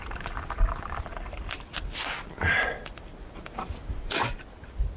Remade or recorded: recorded